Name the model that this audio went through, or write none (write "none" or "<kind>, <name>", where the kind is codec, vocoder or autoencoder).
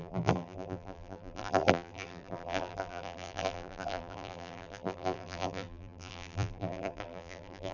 vocoder, BigVGAN v2